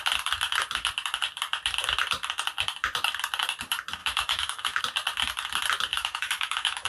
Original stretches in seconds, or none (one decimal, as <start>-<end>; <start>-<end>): 0.0-4.0; 4.8-5.9